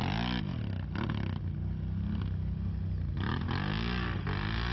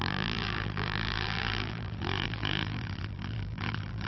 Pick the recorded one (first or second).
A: first